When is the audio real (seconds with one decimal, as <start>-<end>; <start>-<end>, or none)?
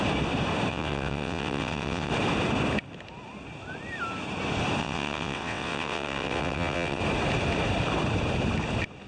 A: 0.0-0.7; 2.1-4.8; 7.0-9.1